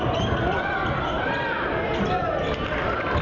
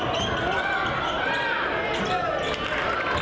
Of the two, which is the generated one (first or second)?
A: first